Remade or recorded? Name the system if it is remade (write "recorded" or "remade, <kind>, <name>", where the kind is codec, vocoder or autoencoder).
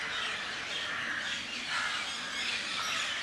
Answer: recorded